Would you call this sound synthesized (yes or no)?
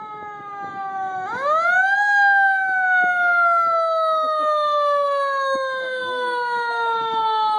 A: yes